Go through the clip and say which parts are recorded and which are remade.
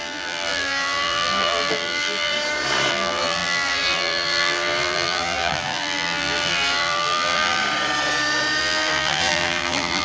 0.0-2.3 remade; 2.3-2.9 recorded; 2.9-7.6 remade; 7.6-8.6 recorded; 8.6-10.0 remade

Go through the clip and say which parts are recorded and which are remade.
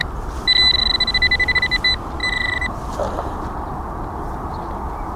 0.0-2.2 recorded; 2.2-3.7 remade; 3.7-5.2 recorded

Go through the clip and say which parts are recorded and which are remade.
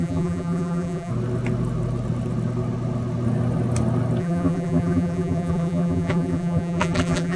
0.0-1.1 remade; 1.1-4.2 recorded; 4.2-7.4 remade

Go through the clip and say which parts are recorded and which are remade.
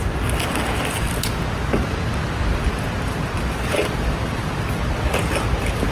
0.0-1.9 recorded; 1.9-2.7 remade; 2.7-5.9 recorded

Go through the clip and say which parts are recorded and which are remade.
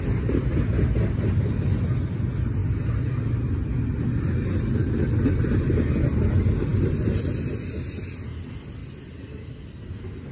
0.0-10.3 recorded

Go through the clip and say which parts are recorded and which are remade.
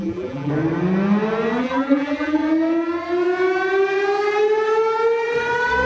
0.0-0.5 remade; 0.5-1.6 recorded; 1.6-2.4 remade; 2.4-5.9 recorded